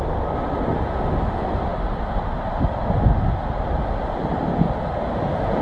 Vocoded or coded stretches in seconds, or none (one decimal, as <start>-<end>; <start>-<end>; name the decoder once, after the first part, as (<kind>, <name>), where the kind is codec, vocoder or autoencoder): none